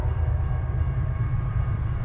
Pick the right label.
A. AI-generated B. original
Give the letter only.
A